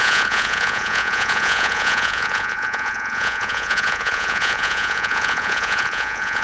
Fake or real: fake